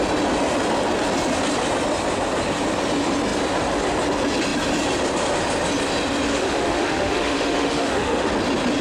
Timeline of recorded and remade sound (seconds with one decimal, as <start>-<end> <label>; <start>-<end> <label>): 0.0-6.3 recorded; 6.3-8.3 remade; 8.3-8.8 recorded